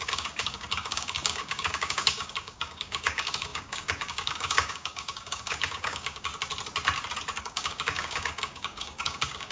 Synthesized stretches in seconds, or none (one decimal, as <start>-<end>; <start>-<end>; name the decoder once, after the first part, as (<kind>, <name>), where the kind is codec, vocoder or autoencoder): 0.0-6.3 (codec, DAC); 7.4-9.5